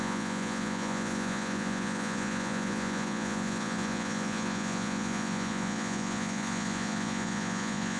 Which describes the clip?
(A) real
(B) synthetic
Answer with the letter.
B